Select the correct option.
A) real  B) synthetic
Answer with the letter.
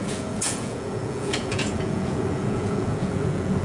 B